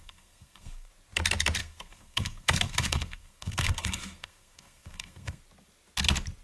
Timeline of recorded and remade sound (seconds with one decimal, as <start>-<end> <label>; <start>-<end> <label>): 0.0-0.9 remade; 0.9-1.6 recorded; 1.6-5.4 remade; 5.4-6.4 recorded